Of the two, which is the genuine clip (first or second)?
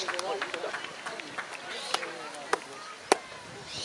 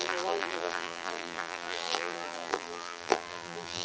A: first